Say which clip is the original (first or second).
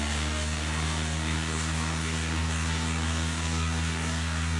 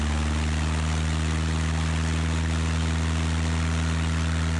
second